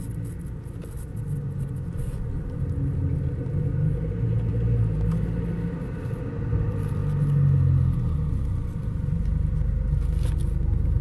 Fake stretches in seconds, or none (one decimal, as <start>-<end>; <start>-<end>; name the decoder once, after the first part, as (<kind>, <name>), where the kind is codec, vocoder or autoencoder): none